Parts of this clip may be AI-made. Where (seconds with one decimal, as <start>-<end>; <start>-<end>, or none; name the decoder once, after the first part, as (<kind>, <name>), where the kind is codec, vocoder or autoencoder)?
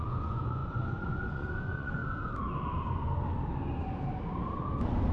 0.0-2.0 (vocoder, Vocos)